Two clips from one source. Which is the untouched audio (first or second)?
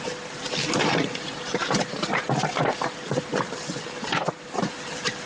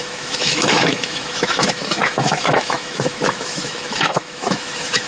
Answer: first